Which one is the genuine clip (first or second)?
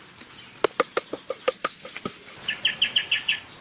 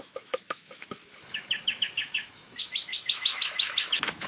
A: first